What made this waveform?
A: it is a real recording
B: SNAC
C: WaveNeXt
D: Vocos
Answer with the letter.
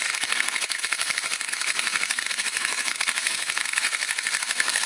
B